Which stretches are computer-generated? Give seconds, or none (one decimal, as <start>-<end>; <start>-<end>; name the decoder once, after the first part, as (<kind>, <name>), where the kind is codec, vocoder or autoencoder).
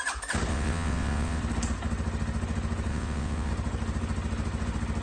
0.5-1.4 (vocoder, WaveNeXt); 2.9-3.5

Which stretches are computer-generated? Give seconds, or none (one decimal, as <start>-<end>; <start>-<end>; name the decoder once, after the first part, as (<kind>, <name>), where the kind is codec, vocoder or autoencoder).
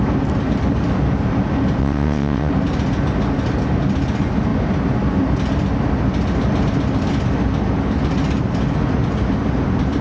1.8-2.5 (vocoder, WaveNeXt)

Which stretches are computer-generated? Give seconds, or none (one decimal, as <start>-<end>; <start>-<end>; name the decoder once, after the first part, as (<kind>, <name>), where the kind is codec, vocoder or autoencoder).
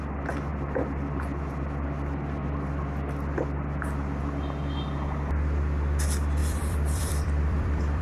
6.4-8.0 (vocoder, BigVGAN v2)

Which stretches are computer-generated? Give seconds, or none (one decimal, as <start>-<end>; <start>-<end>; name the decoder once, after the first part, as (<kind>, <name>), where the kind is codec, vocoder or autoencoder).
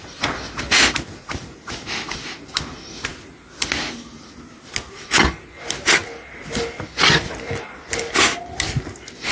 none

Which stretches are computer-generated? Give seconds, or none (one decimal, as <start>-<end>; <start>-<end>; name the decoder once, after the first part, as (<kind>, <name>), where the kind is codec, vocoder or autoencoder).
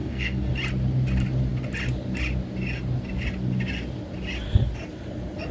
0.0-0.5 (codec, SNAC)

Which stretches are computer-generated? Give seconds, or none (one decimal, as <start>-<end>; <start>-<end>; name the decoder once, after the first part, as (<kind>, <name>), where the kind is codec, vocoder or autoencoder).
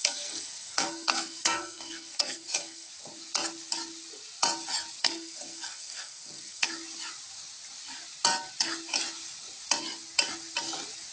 0.0-2.9 (codec, SNAC); 5.0-6.7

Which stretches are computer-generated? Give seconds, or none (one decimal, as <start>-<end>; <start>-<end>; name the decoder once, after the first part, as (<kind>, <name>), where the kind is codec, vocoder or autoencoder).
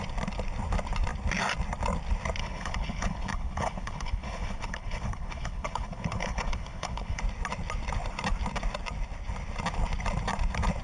2.4-7.2 (codec, HILCodec)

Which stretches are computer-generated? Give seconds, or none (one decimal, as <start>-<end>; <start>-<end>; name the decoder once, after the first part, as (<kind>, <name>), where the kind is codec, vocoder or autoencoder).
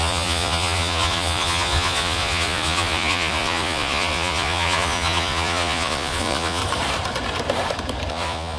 0.0-6.6 (vocoder, Vocos); 8.1-8.6